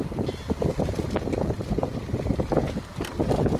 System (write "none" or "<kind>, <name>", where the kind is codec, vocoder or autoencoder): none